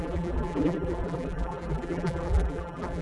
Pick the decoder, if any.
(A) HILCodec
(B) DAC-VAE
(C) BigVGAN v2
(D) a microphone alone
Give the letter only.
C